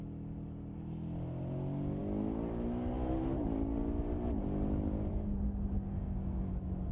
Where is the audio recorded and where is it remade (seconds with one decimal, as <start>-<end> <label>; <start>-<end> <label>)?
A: 0.0-5.9 recorded; 5.9-6.5 remade; 6.5-6.9 recorded